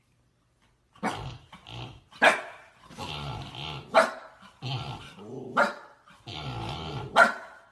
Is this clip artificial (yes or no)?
no